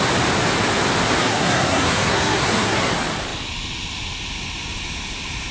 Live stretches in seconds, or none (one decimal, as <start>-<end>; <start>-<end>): 0.0-1.2; 2.9-5.5